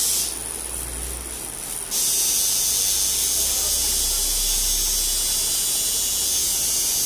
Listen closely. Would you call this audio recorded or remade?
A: recorded